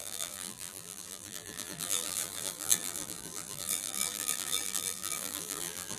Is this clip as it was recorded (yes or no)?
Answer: no